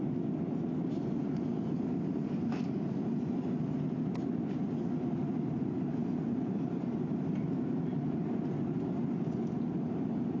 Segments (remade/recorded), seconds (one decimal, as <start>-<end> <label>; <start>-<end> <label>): 0.0-5.2 recorded; 5.2-8.2 remade; 8.2-10.4 recorded